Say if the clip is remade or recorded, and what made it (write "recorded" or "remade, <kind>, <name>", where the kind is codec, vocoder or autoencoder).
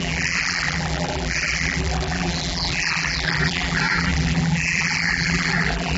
remade, vocoder, BigVGAN v2